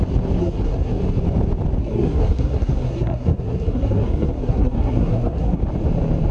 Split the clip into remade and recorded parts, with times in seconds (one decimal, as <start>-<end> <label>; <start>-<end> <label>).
0.0-0.4 recorded; 0.4-1.0 remade; 1.0-1.8 recorded; 1.8-5.6 remade; 5.6-6.3 recorded